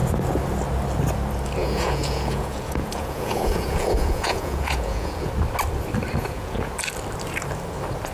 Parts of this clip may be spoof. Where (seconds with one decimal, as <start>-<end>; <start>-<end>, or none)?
1.6-5.3; 6.2-6.7